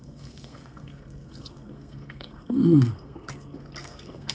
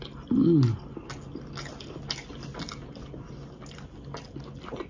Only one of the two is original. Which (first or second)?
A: second